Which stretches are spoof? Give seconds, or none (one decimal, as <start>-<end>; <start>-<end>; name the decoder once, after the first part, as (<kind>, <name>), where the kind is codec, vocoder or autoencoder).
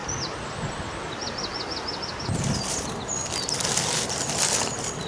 none